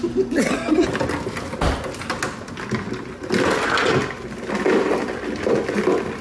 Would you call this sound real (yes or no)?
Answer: yes